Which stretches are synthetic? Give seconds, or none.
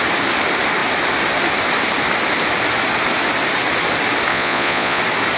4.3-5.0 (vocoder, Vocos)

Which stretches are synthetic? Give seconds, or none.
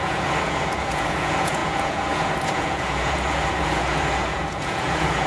0.0-5.3 (vocoder, Vocos)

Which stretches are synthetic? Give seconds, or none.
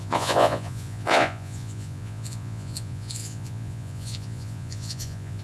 0.0-5.4 (vocoder, Vocos)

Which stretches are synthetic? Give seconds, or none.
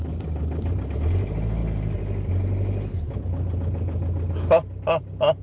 none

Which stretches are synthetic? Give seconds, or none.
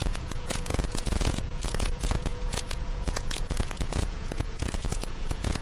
0.0-5.6 (vocoder, Vocos)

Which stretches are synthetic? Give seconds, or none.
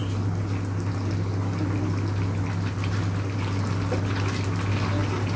none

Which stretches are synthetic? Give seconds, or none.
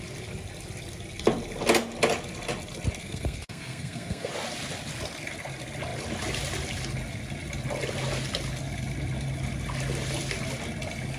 3.0-4.3 (codec, SNAC)